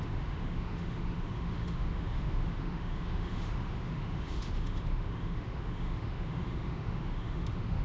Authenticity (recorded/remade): remade